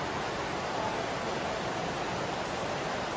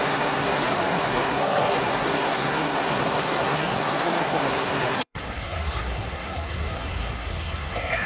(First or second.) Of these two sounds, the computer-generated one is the second